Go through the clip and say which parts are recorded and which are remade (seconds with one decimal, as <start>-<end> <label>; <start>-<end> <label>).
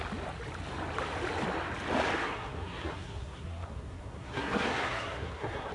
0.0-2.2 recorded; 2.2-5.7 remade